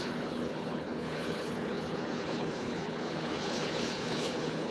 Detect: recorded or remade remade